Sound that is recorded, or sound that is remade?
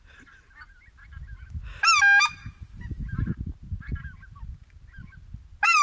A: recorded